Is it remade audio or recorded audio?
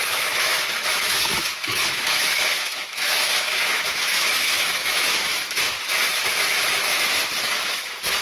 remade